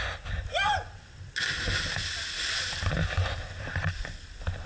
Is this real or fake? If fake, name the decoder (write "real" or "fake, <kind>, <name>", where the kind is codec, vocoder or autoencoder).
real